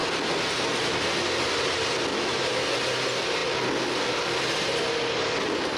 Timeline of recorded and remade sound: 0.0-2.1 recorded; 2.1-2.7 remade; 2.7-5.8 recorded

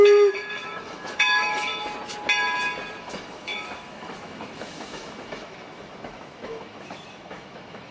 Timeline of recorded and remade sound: 0.0-1.7 remade; 1.7-3.0 recorded; 3.0-7.9 remade

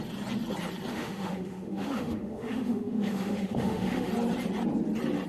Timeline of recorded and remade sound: 0.0-0.9 recorded; 0.9-4.1 remade; 4.1-5.3 recorded

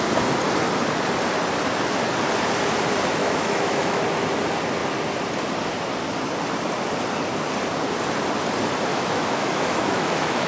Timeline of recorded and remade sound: 0.0-3.2 recorded; 3.2-4.0 remade; 4.0-8.9 recorded; 8.9-10.5 remade

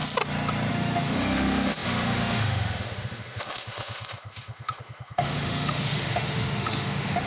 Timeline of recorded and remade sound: 0.0-0.7 recorded; 0.7-7.3 remade

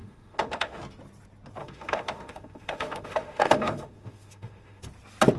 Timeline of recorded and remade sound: 0.0-0.8 remade; 0.8-1.6 recorded; 1.6-4.8 remade; 4.8-5.4 recorded

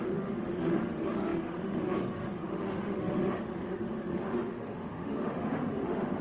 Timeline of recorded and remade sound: 0.0-6.2 remade